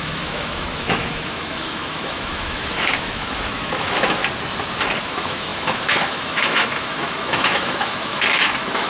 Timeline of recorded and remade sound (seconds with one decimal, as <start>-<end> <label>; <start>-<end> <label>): 0.0-4.2 remade; 4.2-5.0 recorded; 5.0-8.9 remade